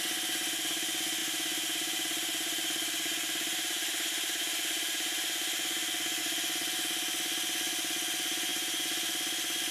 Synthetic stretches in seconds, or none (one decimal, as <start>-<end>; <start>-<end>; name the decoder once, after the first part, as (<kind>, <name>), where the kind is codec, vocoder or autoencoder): 1.2-6.2 (vocoder, BigVGAN v2)